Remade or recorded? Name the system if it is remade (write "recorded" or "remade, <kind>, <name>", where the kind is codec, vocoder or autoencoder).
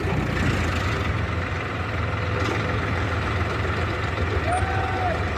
recorded